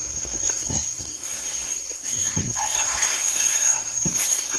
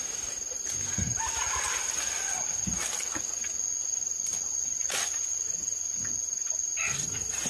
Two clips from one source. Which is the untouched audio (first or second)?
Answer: second